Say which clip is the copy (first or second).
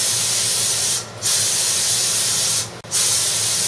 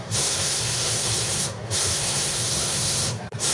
second